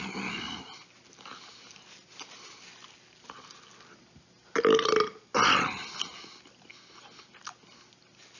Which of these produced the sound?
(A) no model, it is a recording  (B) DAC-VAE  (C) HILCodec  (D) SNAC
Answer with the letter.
A